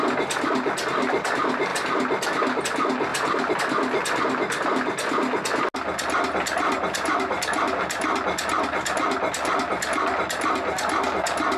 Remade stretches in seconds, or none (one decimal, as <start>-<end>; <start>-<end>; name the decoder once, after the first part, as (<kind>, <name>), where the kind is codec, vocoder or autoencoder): 3.1-3.6 (vocoder, BigVGAN v2)